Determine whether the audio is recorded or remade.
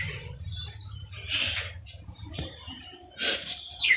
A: remade